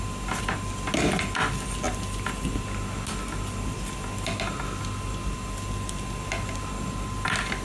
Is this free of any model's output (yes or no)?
yes